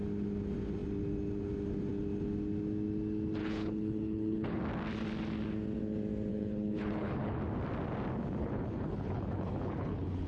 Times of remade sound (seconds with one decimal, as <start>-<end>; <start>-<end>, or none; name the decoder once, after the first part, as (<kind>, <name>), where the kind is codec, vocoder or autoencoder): 3.4-4.6 (codec, HILCodec); 6.3-7.4; 8.4-10.3